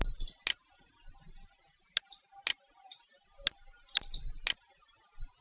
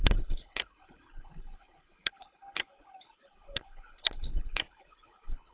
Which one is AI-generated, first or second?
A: second